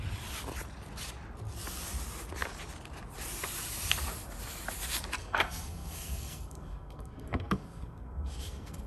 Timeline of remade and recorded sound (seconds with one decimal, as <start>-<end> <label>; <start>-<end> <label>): 0.0-5.2 recorded; 5.2-8.9 remade